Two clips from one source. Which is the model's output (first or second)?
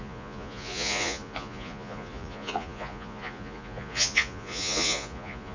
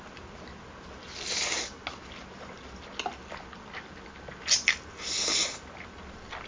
first